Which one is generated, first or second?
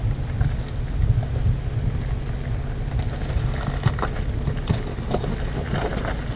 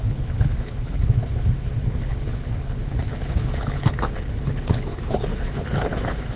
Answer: second